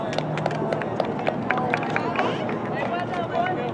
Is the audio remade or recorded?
recorded